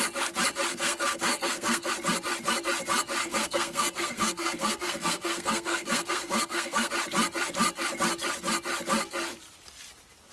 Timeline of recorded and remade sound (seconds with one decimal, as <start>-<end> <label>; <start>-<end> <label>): 0.0-0.7 recorded; 0.7-1.9 remade; 1.9-3.2 recorded; 3.2-6.9 remade; 6.9-10.3 recorded